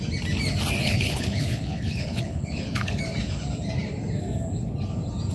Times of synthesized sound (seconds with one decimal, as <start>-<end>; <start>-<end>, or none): 0.8-3.0